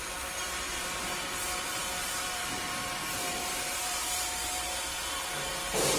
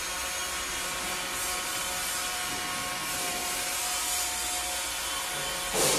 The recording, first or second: second